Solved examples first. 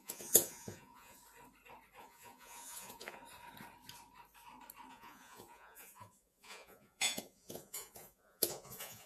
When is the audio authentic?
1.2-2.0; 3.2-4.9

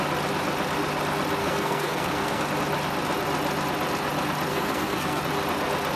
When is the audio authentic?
0.0-1.4; 2.4-4.5; 5.2-6.0

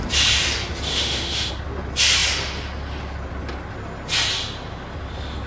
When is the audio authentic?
0.0-0.9; 1.5-5.5

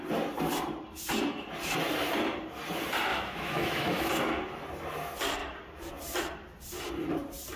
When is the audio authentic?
0.0-3.1; 4.1-7.6

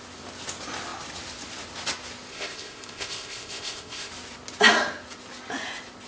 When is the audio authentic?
0.0-2.3; 4.1-6.1

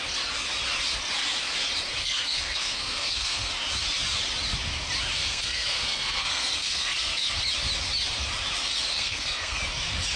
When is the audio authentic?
0.0-2.0; 3.5-5.2; 7.4-8.9; 9.6-10.2

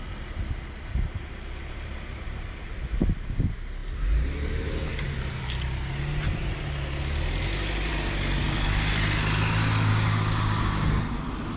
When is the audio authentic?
0.0-9.9; 11.0-11.6

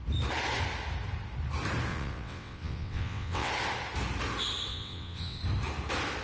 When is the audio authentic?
0.0-1.9; 3.5-4.7; 5.4-6.2